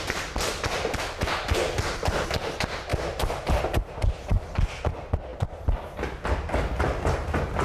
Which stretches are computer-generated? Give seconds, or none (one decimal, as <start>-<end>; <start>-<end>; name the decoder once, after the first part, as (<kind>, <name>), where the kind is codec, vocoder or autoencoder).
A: none